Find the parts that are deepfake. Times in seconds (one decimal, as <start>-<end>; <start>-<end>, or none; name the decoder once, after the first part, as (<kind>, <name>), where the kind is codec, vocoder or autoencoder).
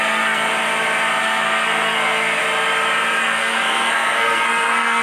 0.0-0.5 (codec, SNAC); 1.2-2.4; 3.2-5.0